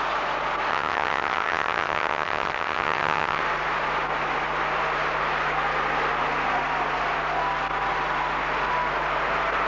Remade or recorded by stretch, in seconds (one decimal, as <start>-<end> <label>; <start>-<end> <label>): 0.0-0.7 recorded; 0.7-3.4 remade; 3.4-9.7 recorded